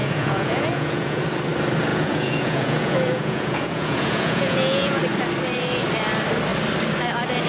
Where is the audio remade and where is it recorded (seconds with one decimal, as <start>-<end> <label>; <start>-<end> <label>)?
0.0-1.2 remade; 1.2-1.9 recorded; 1.9-5.0 remade; 5.0-7.5 recorded